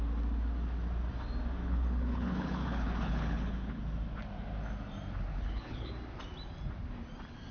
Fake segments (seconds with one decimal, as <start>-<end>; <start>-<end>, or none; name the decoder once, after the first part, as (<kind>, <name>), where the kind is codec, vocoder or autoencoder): 1.6-3.8 (codec, HILCodec); 5.3-5.9